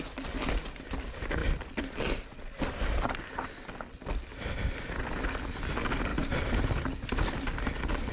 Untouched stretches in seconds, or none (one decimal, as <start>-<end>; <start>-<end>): 0.0-6.1; 6.7-8.1